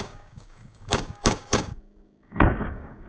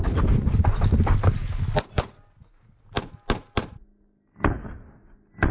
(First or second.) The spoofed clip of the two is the first